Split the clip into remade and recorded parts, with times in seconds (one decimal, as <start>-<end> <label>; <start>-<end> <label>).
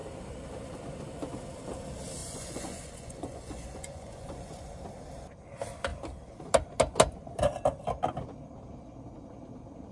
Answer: 0.0-2.2 recorded; 2.2-4.8 remade; 4.8-9.9 recorded